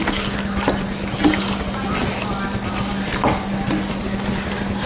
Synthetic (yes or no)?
no